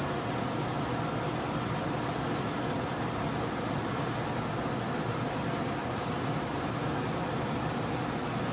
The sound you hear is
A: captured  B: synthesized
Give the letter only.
A